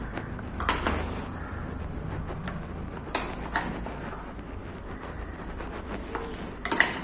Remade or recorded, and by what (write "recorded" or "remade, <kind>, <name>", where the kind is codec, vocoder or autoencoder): recorded